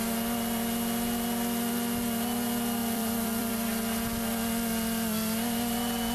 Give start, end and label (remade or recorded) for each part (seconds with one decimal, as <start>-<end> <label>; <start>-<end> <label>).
0.0-2.8 recorded; 2.8-3.5 remade; 3.5-6.1 recorded